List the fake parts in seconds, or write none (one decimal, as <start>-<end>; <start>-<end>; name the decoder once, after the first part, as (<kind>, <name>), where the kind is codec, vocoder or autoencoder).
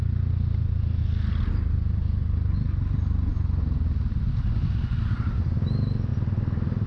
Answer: none